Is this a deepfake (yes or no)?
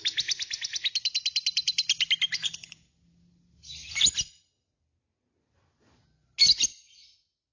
no